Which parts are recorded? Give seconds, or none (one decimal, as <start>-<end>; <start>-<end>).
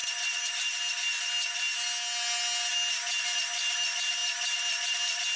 0.0-5.4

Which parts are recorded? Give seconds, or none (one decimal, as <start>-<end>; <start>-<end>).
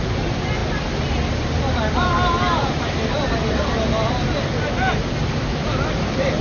0.0-6.4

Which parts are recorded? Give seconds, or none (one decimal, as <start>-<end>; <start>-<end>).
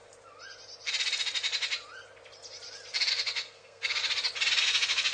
0.0-3.1; 4.0-4.6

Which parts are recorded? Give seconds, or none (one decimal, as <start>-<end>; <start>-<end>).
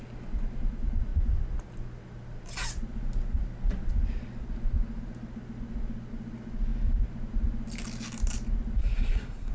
0.0-8.8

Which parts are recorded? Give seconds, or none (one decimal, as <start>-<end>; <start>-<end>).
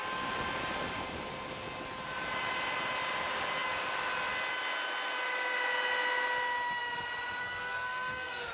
0.0-7.4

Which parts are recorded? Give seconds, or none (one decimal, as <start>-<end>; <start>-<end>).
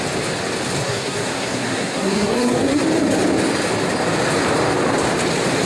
0.0-0.8; 2.8-5.7